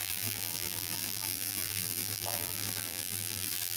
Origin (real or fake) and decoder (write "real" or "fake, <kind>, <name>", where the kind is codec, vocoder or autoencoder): fake, vocoder, BigVGAN v2